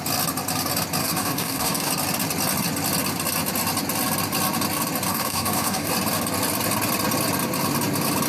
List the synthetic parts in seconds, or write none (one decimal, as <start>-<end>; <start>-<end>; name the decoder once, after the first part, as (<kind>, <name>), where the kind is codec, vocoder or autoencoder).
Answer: 1.0-1.9 (codec, DAC); 5.1-5.9